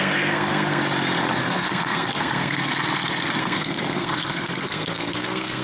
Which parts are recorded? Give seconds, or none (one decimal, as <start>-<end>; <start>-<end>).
0.8-1.4; 2.7-3.4